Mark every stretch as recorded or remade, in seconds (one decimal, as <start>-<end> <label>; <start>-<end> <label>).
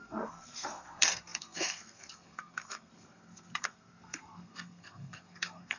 0.0-5.8 remade